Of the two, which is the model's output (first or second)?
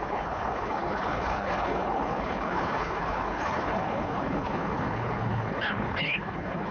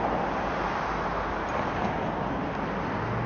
first